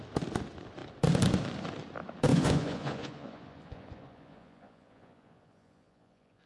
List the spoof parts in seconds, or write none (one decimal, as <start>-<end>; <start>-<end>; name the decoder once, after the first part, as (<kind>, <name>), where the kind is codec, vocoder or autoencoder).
2.3-6.5 (vocoder, Vocos)